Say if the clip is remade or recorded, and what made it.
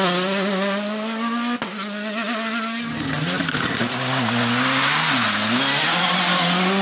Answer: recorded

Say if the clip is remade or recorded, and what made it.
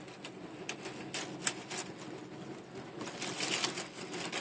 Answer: recorded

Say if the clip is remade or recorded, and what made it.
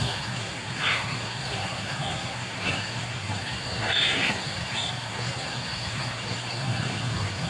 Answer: remade, codec, SNAC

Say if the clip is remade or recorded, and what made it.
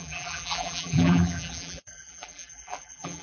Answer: remade, vocoder, BigVGAN v2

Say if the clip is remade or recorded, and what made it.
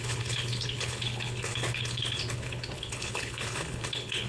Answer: remade, codec, HILCodec